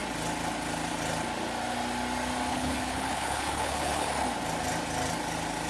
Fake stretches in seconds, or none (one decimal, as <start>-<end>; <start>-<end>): 2.5-4.1